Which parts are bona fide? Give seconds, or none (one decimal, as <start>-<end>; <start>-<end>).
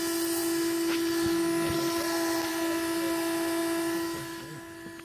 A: 0.0-5.0